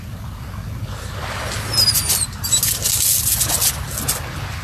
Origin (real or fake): real